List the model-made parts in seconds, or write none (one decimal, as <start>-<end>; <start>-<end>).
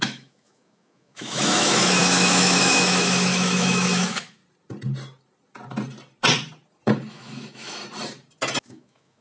0.0-4.4; 7.1-7.8; 8.6-9.2